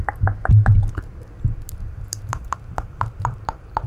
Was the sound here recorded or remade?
remade